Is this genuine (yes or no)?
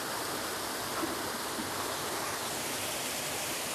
yes